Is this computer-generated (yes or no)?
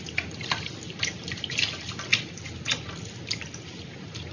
no